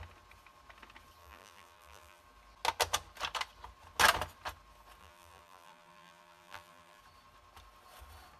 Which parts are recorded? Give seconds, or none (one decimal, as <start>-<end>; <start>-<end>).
0.0-1.2; 2.2-5.0; 7.0-8.4